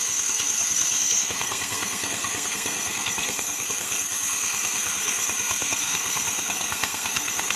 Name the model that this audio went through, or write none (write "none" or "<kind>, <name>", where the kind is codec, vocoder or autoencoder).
codec, SNAC